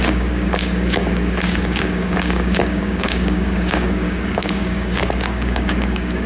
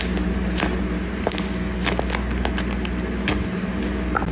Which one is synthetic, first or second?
first